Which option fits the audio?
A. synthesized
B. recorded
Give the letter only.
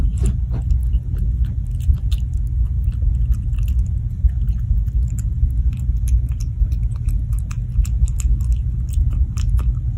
B